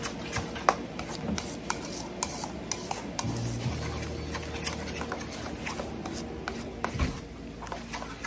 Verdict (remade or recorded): recorded